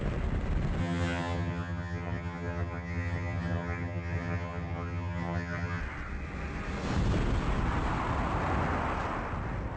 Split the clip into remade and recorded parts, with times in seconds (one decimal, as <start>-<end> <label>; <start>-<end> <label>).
0.0-0.8 recorded; 0.8-5.8 remade; 5.8-9.8 recorded